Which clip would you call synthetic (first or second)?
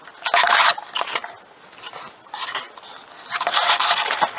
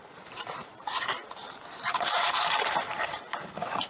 second